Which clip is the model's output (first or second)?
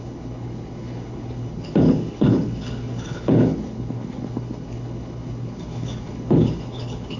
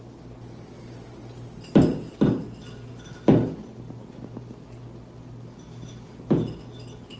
first